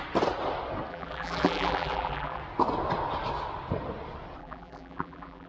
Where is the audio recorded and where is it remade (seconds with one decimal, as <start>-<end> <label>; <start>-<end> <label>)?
0.0-0.9 recorded; 0.9-2.4 remade; 2.4-4.4 recorded; 4.4-5.5 remade